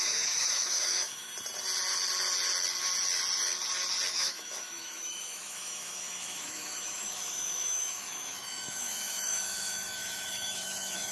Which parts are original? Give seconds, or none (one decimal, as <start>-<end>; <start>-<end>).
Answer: 1.3-4.1